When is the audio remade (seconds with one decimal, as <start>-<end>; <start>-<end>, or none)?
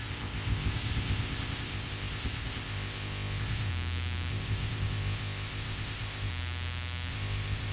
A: 0.0-3.7; 4.3-6.3; 7.1-7.7